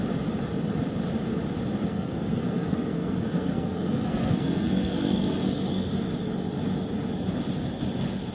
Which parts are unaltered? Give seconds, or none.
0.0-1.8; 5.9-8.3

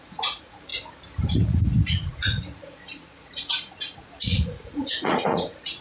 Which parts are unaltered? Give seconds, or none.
0.7-1.3

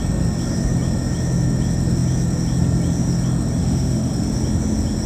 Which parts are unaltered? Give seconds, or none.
0.0-3.6; 4.1-5.1